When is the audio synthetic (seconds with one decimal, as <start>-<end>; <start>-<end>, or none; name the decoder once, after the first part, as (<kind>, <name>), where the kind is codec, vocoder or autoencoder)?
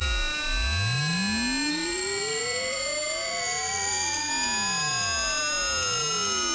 1.7-4.3 (vocoder, BigVGAN v2)